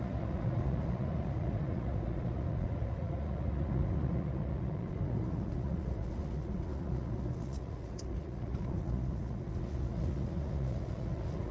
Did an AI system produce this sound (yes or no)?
yes